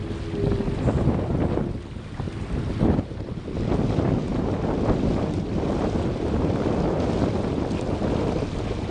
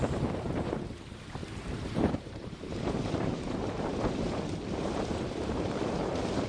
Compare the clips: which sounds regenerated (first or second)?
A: second